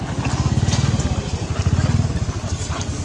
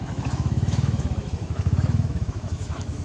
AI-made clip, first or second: second